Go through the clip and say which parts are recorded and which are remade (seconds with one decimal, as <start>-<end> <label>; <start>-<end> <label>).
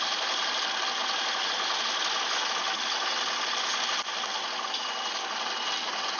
0.0-6.2 recorded